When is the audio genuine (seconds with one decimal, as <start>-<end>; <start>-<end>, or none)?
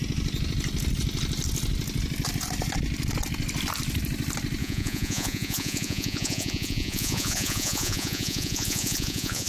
0.0-4.6